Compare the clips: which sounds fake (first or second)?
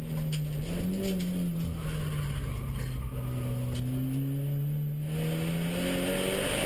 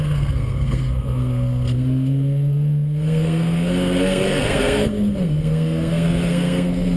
second